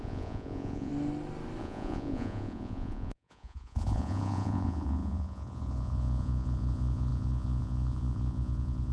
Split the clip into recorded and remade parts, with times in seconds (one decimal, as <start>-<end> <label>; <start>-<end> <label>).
0.0-0.9 remade; 0.9-1.6 recorded; 1.6-8.9 remade